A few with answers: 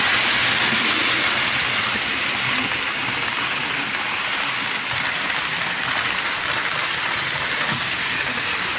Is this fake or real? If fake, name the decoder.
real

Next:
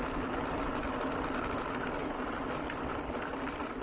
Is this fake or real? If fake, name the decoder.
real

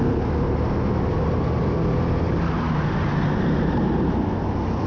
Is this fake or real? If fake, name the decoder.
real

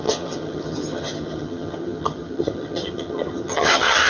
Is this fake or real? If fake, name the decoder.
fake, vocoder, HiFi-GAN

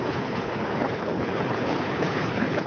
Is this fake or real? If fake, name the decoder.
fake, codec, HILCodec